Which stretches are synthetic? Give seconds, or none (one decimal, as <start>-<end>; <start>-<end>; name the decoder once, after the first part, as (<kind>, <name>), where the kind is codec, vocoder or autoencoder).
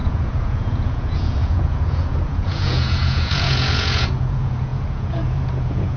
0.0-6.0 (vocoder, Vocos)